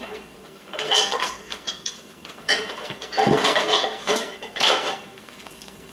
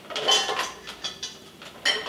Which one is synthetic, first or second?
first